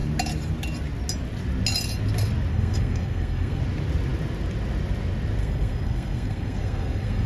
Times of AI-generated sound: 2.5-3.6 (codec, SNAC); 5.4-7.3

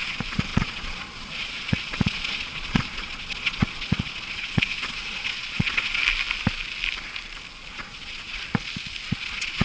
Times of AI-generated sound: 0.0-6.0 (vocoder, Vocos); 7.7-8.4; 9.1-9.6